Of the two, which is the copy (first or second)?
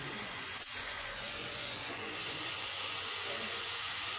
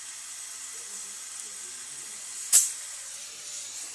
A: first